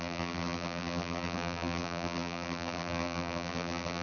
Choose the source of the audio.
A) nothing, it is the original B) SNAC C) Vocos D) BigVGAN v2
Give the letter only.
D